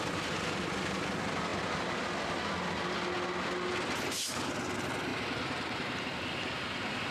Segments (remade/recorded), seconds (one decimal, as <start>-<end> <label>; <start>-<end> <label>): 0.0-7.1 recorded